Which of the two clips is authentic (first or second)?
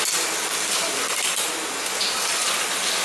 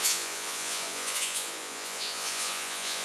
first